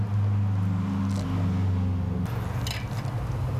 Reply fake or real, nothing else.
real